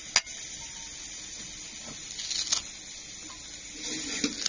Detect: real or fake real